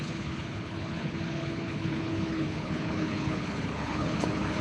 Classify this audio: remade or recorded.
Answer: remade